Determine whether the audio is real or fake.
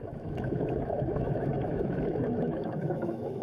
fake